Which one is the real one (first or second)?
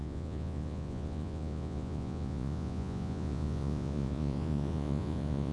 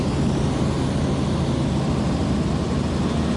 second